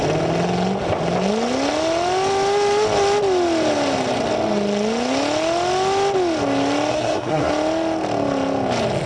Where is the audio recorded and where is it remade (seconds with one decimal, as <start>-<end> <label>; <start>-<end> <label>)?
0.0-6.9 recorded; 6.9-7.5 remade; 7.5-9.1 recorded

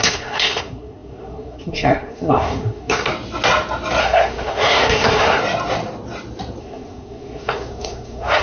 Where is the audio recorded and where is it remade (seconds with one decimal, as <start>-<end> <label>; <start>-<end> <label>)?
0.0-3.1 remade; 3.1-4.0 recorded; 4.0-5.4 remade; 5.4-6.6 recorded; 6.6-8.4 remade